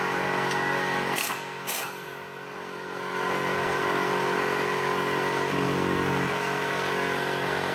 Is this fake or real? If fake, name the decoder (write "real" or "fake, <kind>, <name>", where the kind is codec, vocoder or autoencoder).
fake, codec, SNAC